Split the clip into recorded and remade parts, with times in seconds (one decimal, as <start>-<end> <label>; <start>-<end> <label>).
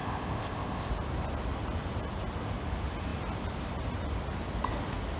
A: 0.0-0.9 remade; 0.9-5.2 recorded